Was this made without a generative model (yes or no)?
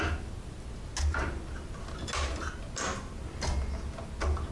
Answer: yes